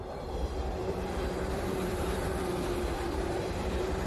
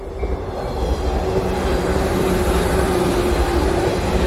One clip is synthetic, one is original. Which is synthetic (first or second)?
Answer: first